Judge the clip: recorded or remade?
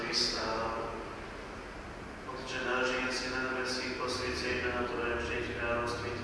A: recorded